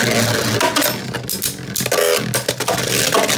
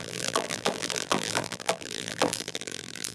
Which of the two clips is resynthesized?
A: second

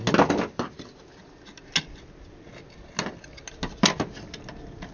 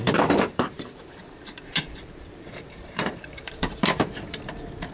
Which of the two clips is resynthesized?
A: second